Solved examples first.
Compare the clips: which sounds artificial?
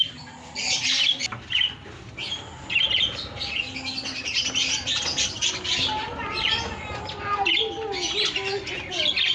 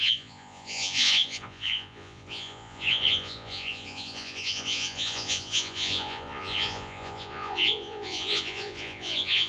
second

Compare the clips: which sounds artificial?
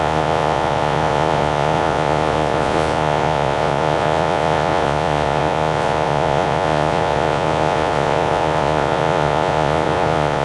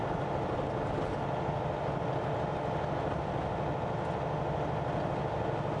first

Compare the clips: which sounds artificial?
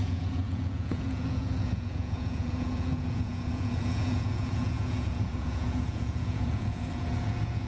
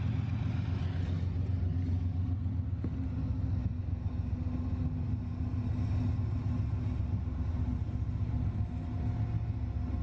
first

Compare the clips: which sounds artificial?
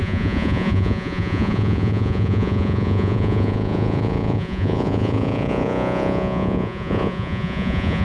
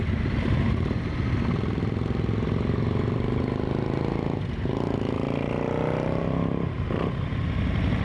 first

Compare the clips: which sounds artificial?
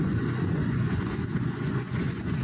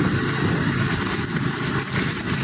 first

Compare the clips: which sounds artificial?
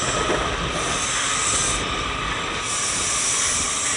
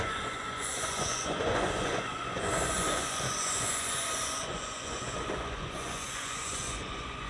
second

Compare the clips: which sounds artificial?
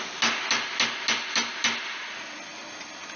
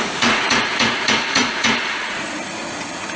second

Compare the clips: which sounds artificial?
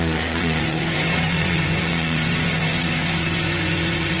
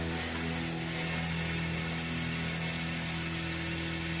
first